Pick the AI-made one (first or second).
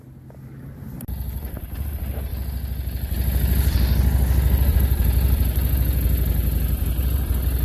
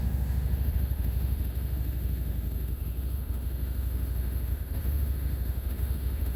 second